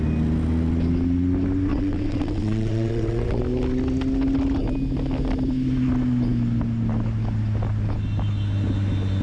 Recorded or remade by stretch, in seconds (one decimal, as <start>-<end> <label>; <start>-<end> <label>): 0.0-1.7 recorded; 1.7-3.4 remade; 3.4-9.2 recorded